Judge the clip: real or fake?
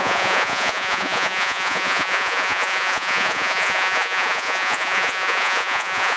fake